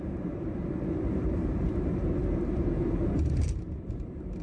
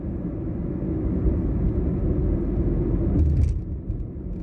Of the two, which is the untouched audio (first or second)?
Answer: second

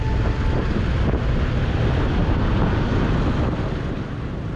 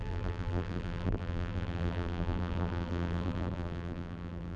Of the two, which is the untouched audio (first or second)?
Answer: first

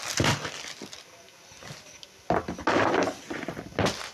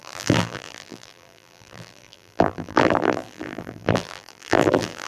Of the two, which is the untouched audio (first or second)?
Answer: first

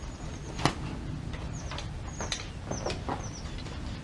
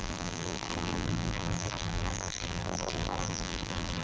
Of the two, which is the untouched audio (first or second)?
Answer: first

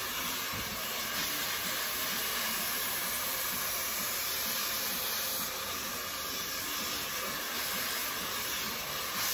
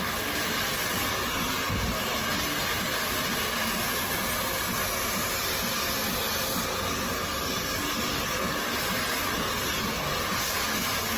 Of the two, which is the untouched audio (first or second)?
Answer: second